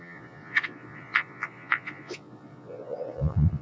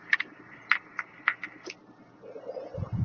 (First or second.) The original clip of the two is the second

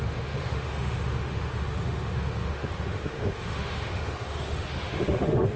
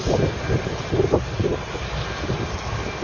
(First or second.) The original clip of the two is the second